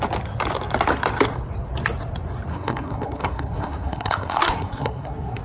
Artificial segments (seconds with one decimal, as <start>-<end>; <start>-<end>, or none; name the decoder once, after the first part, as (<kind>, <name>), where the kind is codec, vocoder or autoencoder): 2.5-5.4 (codec, SNAC)